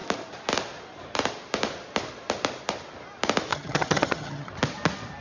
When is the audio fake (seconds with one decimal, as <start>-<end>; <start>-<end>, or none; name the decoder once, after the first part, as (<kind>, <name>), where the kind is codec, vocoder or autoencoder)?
3.5-4.5 (vocoder, HiFi-GAN)